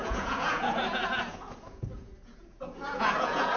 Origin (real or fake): fake